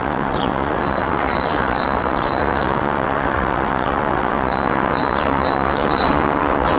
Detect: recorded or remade remade